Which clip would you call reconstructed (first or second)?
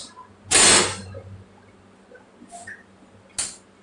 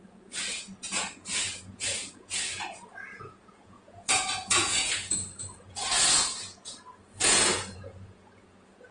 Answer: second